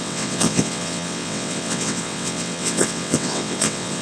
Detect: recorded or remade remade